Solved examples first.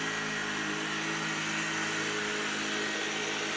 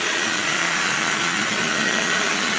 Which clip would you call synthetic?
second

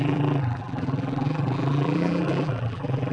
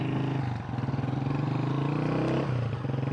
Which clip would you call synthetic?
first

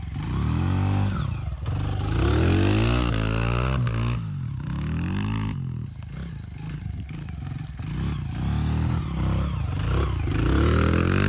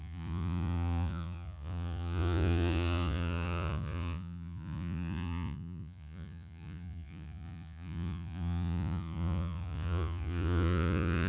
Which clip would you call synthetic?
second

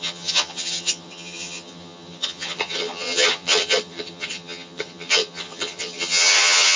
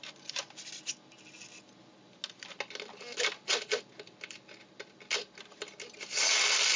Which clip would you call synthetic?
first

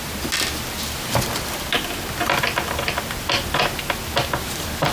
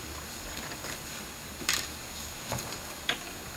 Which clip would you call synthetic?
second